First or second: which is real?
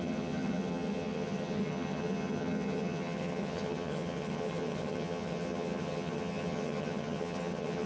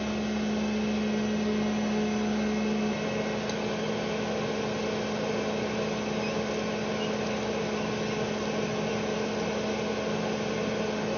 second